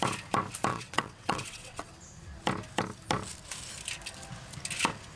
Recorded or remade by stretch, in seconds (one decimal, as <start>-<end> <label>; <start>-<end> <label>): 0.0-0.7 recorded; 0.7-1.9 remade; 1.9-5.2 recorded

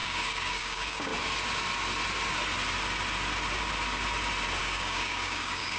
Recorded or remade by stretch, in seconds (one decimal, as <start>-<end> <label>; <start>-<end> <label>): 0.0-1.1 remade; 1.1-4.6 recorded; 4.6-5.8 remade

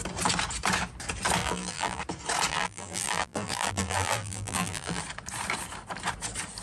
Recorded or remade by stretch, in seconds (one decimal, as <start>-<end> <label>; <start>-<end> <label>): 0.0-1.4 recorded; 1.4-2.0 remade; 2.0-2.5 recorded; 2.5-5.0 remade; 5.0-6.6 recorded